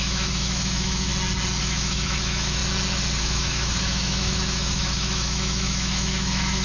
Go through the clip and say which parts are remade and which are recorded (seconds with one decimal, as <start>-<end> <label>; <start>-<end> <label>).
0.0-1.1 remade; 1.1-1.6 recorded; 1.6-2.6 remade; 2.6-3.2 recorded; 3.2-6.6 remade

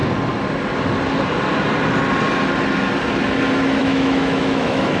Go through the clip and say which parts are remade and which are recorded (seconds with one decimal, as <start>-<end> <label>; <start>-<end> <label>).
0.0-3.8 recorded; 3.8-5.0 remade

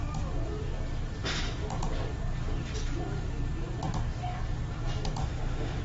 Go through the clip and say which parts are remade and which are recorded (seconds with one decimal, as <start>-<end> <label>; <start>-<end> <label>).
0.0-5.2 recorded; 5.2-5.8 remade

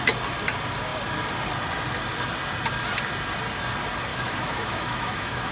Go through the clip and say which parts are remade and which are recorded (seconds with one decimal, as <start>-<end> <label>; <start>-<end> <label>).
0.0-4.1 recorded; 4.1-5.5 remade

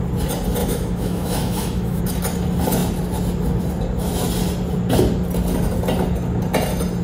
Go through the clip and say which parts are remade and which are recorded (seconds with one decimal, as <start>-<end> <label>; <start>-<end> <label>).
0.0-0.6 recorded; 0.6-2.0 remade; 2.0-7.0 recorded